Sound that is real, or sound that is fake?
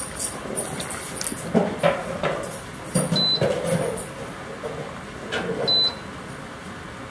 real